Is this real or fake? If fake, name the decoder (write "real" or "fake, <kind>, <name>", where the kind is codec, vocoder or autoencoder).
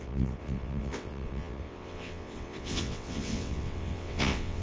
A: fake, vocoder, WaveNeXt